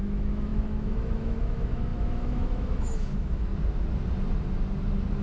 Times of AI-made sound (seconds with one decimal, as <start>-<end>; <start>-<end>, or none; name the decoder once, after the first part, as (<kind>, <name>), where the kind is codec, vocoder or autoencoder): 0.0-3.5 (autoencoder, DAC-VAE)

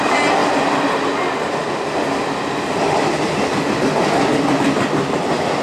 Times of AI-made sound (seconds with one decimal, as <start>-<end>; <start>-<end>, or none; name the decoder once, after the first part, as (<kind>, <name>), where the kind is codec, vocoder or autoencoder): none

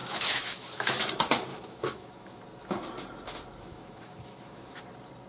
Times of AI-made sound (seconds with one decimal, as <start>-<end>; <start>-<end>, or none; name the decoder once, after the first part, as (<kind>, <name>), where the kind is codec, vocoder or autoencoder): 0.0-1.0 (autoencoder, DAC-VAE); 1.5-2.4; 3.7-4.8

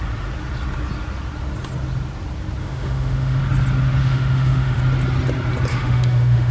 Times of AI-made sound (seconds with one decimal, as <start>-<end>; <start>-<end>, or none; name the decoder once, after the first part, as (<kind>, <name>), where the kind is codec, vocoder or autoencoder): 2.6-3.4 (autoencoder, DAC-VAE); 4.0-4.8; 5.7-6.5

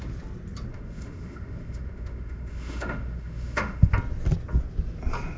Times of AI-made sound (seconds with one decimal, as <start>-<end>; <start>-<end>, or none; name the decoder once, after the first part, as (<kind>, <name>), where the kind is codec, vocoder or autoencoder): 0.7-3.9 (autoencoder, DAC-VAE)

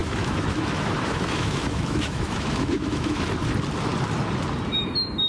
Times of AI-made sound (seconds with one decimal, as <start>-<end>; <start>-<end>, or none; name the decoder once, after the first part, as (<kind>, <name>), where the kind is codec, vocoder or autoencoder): 0.0-3.2 (autoencoder, DAC-VAE)